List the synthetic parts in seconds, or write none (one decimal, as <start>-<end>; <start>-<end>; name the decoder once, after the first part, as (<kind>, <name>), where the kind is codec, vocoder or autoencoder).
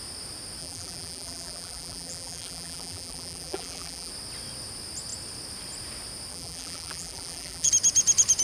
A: 0.6-4.1 (vocoder, BigVGAN v2); 6.3-7.7